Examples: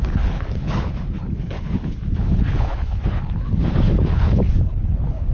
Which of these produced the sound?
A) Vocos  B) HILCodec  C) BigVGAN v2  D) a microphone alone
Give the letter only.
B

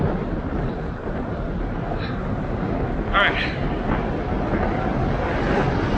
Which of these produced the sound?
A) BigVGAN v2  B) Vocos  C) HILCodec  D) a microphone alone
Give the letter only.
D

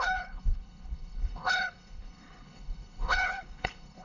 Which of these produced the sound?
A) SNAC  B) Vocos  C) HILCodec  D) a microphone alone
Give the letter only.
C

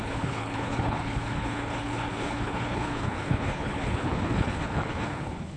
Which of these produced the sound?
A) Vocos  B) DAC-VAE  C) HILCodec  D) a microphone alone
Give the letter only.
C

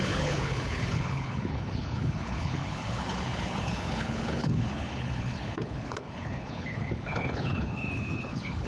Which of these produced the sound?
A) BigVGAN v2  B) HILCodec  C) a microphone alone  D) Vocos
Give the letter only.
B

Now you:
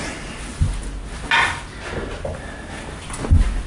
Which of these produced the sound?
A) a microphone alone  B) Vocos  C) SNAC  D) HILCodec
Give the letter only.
A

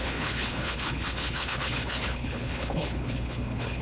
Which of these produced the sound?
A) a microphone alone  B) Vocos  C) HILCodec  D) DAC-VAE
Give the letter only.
C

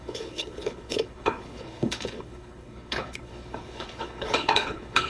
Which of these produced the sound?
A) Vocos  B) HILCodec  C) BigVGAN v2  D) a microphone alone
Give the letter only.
B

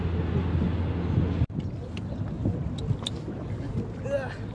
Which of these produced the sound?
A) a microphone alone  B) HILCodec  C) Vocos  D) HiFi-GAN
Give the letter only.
A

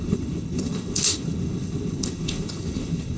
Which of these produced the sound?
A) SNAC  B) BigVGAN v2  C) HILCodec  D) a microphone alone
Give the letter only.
C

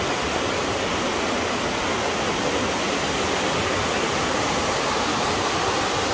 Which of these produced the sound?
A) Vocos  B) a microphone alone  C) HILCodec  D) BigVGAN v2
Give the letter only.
B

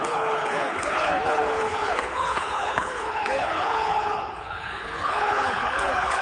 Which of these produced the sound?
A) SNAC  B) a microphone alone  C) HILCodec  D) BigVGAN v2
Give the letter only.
C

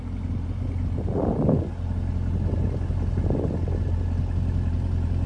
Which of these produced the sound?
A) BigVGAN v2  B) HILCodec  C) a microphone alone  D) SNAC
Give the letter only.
C